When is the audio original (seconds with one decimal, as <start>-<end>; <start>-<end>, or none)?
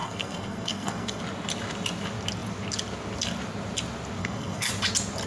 1.2-4.2; 4.7-5.3